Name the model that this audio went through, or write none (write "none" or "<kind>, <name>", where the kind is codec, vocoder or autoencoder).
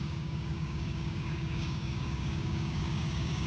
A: codec, DAC